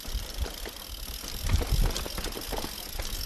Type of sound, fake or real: real